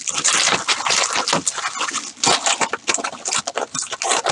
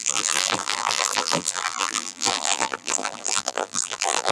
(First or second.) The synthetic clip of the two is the second